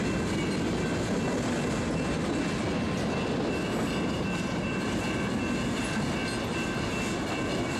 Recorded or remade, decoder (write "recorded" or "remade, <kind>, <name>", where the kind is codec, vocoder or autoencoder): recorded